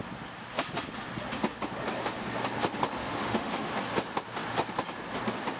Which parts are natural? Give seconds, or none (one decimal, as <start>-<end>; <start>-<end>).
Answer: 0.0-3.0; 3.7-5.6